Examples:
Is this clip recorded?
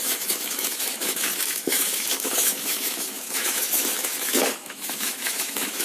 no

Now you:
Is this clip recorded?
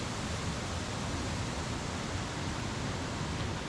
yes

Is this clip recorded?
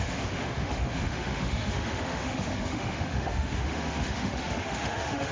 no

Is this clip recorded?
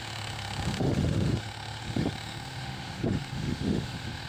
no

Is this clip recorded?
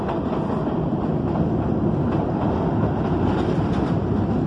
yes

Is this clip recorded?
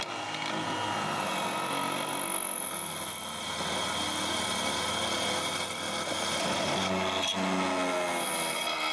yes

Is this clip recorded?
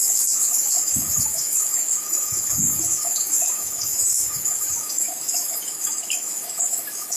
no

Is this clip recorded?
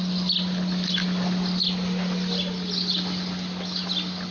yes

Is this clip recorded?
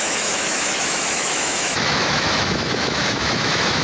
no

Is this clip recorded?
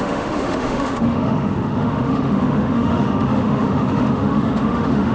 no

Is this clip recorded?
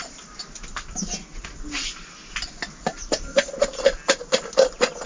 yes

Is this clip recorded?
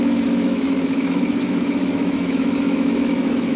no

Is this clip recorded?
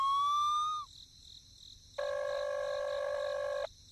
yes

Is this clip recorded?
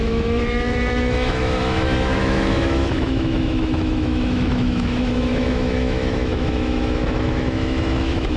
no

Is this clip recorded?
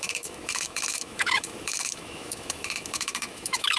no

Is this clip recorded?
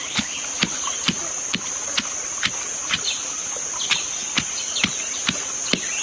yes